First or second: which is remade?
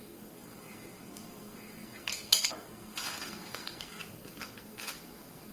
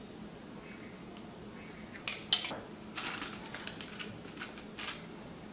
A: first